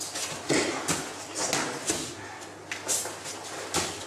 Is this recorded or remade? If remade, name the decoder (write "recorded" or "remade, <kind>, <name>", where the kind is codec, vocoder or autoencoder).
recorded